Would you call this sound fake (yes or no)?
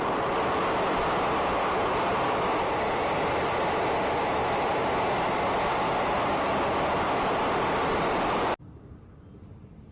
no